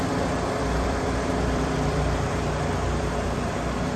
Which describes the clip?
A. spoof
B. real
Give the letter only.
A